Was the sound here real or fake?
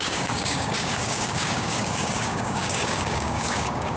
fake